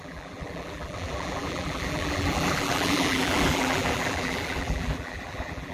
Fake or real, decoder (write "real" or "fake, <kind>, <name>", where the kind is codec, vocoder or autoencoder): fake, vocoder, BigVGAN v2